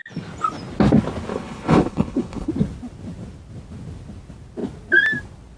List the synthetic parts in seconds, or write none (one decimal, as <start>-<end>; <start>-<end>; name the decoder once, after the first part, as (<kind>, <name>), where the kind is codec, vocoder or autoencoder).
1.3-2.5 (codec, HILCodec)